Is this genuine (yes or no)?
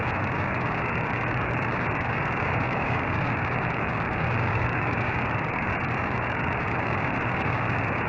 no